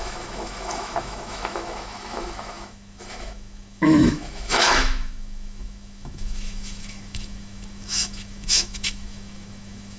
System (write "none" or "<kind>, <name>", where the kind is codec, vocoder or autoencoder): autoencoder, DAC-VAE